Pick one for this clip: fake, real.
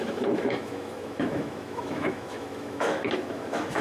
fake